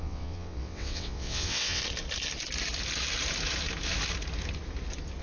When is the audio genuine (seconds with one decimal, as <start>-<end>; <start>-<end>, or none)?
1.8-5.2